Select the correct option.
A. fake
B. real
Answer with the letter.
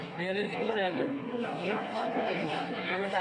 A